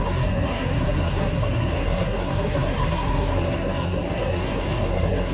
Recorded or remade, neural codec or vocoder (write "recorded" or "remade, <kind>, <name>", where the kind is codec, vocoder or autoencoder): remade, codec, SNAC